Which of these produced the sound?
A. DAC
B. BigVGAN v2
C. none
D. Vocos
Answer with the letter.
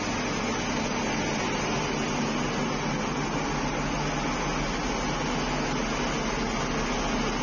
C